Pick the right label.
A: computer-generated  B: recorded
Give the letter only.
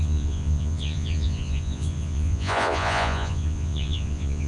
A